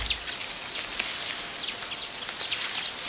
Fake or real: real